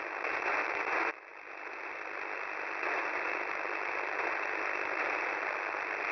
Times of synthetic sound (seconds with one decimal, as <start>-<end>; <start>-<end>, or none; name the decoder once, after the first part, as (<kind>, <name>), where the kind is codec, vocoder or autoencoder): none